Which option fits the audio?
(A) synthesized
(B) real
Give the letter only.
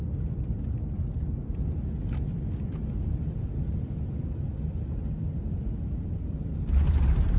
B